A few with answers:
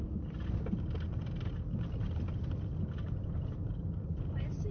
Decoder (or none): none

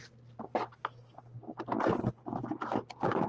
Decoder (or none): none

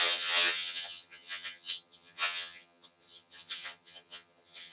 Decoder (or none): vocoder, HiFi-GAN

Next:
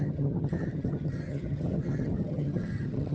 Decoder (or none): vocoder, HiFi-GAN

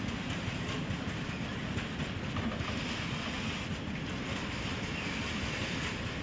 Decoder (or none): none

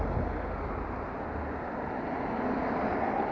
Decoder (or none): none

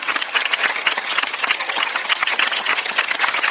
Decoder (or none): vocoder, HiFi-GAN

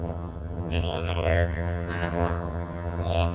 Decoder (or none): vocoder, HiFi-GAN